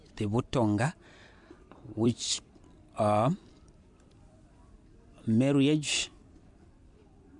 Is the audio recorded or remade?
remade